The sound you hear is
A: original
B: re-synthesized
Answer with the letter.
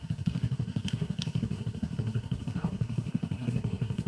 B